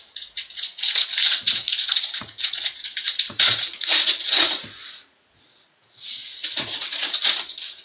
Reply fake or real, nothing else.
fake